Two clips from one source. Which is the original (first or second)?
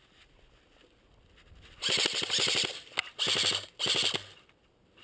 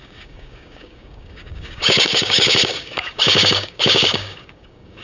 first